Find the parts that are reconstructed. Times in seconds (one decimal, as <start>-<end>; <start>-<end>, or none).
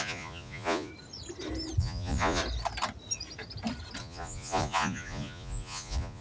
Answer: 0.0-0.9; 1.8-2.4; 4.0-6.2